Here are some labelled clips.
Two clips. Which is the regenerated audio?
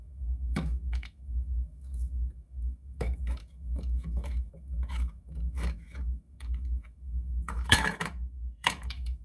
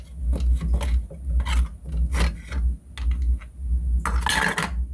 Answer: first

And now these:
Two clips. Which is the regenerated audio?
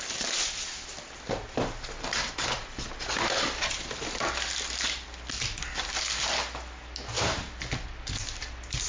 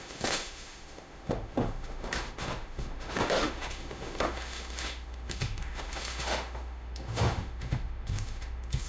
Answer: second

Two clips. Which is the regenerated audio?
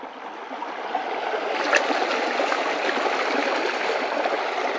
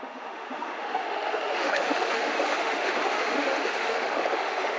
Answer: second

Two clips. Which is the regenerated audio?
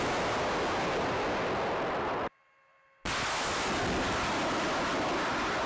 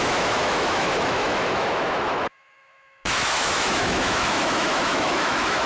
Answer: second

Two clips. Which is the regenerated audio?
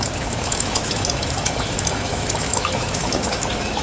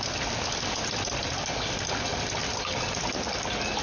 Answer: first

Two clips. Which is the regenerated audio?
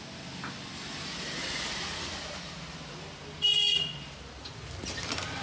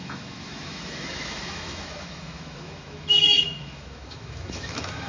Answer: second